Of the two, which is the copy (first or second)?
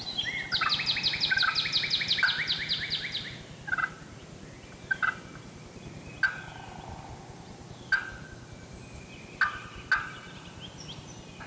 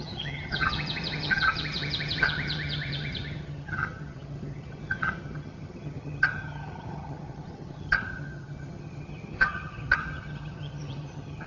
second